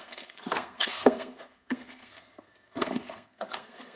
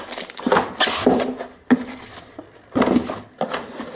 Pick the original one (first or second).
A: second